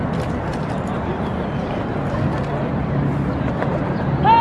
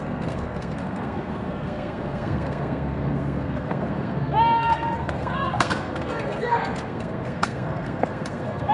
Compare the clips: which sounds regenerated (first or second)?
second